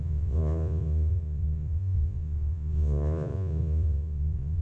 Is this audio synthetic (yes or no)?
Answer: yes